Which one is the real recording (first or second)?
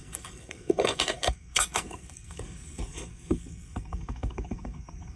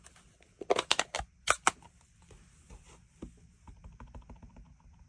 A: second